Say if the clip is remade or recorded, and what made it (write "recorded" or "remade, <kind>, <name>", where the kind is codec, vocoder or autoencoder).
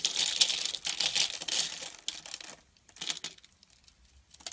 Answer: recorded